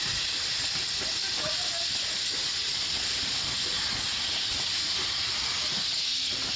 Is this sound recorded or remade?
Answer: recorded